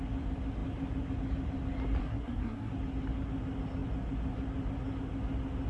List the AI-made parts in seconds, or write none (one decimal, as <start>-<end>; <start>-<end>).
2.0-2.7